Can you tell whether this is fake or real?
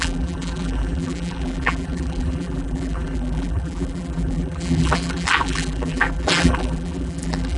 fake